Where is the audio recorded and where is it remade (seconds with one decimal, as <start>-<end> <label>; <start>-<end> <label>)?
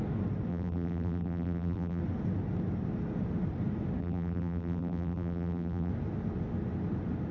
0.0-0.5 recorded; 0.5-2.0 remade; 2.0-4.0 recorded; 4.0-5.9 remade; 5.9-7.3 recorded